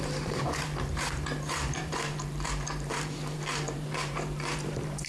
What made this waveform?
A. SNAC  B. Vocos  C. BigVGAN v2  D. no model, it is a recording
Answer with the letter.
C